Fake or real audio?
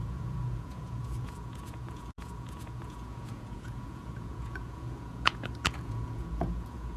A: fake